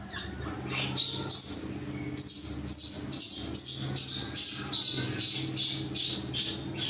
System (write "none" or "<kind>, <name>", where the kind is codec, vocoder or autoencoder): none